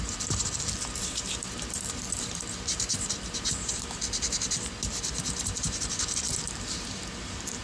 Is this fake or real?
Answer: fake